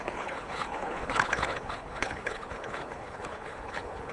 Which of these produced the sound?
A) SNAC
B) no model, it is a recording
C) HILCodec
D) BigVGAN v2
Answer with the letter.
C